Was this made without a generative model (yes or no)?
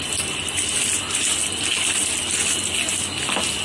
yes